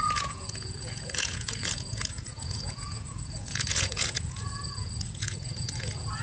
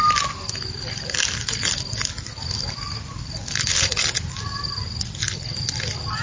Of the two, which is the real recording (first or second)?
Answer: second